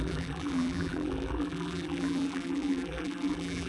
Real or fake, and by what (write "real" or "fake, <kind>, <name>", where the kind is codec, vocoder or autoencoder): fake, vocoder, BigVGAN v2